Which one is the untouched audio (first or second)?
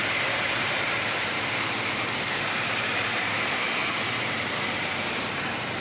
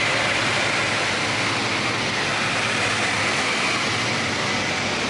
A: second